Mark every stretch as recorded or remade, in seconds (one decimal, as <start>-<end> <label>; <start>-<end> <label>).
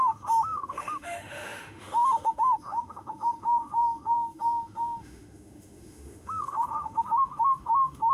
0.0-8.1 remade